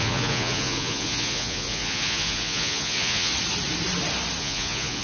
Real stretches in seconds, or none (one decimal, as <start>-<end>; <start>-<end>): 3.3-4.4